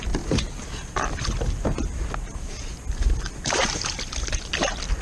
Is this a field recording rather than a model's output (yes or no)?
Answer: yes